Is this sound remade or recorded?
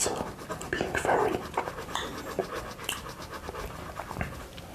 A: recorded